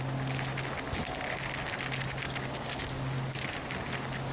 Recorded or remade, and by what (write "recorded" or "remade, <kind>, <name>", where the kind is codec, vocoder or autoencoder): recorded